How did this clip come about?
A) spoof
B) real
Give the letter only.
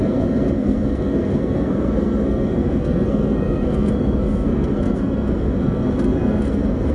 A